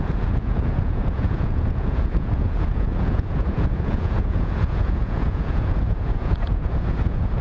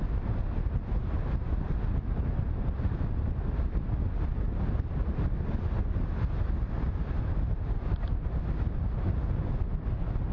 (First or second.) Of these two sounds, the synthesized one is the first